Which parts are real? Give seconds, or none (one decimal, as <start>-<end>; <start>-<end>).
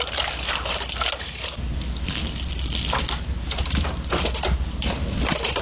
0.0-5.6